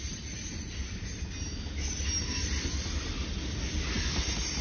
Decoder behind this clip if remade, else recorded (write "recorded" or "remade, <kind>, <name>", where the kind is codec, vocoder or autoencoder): recorded